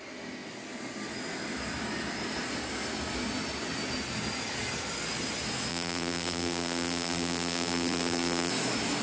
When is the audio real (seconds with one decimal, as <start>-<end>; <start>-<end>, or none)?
0.0-5.7; 8.5-9.0